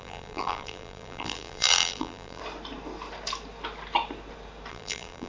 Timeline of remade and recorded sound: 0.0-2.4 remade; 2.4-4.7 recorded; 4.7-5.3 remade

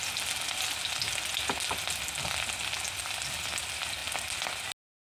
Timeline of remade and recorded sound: 0.0-5.1 recorded

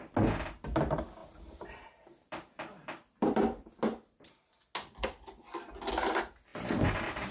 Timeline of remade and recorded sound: 0.0-1.2 recorded; 1.2-3.7 remade; 3.7-6.5 recorded; 6.5-7.3 remade